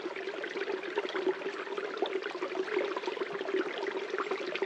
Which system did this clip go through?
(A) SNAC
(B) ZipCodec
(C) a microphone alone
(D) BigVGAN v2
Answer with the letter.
C